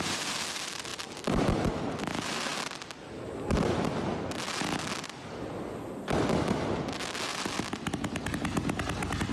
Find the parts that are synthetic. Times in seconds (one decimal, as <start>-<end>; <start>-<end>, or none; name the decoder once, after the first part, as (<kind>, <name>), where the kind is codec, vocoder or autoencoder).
2.5-3.7 (vocoder, BigVGAN v2); 7.3-7.9

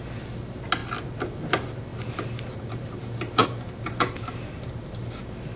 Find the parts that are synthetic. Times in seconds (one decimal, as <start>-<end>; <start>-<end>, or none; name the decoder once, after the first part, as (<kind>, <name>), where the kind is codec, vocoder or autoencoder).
none